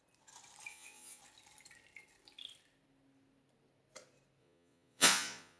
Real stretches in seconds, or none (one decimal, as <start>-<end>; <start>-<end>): 0.0-0.7; 1.2-4.4